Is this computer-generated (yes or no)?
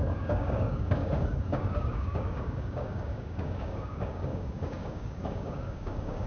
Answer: yes